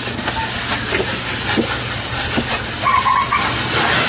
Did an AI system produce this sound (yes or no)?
no